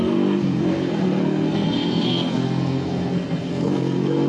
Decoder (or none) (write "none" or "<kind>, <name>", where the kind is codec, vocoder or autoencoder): codec, SNAC